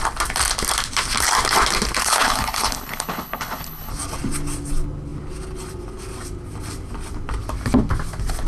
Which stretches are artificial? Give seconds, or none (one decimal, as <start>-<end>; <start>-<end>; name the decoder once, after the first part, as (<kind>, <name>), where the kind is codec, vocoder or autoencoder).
2.0-3.9 (codec, HILCodec)